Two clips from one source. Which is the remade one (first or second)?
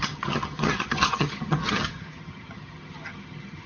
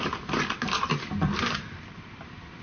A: first